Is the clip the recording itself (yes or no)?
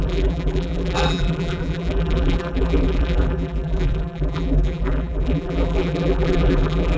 no